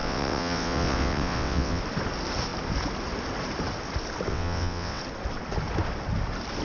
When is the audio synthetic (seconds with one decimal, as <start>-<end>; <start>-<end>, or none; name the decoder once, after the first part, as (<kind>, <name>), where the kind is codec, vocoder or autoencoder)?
0.0-1.8 (vocoder, WaveNeXt); 4.3-5.0